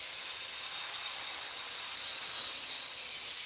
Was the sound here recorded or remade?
recorded